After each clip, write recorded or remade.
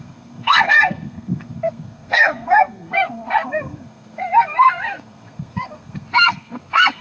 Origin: remade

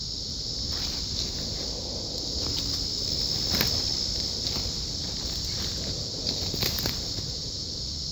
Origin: recorded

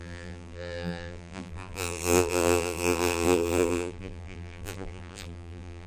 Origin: remade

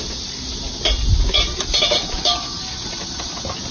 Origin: recorded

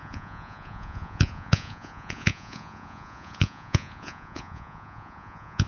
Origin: remade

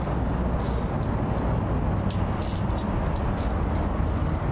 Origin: recorded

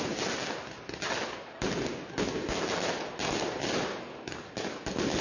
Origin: recorded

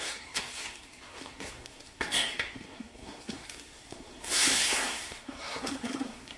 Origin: remade